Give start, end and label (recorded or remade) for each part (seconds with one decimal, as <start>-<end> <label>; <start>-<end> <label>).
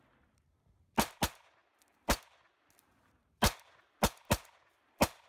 0.0-5.3 recorded